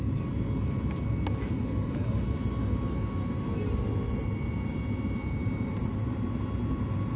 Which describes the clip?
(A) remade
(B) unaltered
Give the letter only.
B